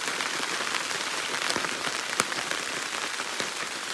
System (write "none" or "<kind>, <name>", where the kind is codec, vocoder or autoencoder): vocoder, BigVGAN v2